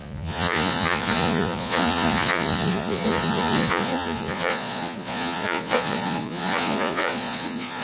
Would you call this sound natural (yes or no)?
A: no